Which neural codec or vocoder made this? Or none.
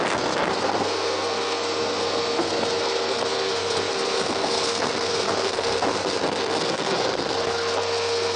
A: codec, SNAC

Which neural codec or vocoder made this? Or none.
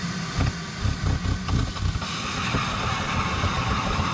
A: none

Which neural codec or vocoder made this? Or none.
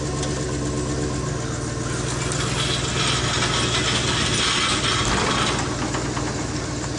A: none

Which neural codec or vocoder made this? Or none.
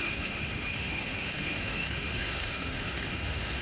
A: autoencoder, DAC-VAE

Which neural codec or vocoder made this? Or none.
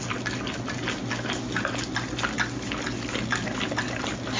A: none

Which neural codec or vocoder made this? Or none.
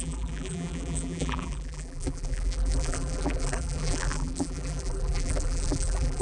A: vocoder, BigVGAN v2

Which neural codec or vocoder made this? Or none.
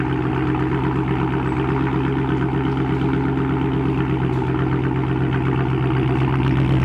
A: none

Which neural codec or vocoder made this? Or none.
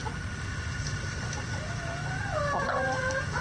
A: none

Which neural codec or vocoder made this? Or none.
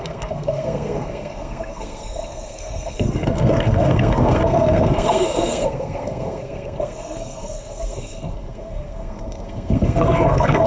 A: codec, SNAC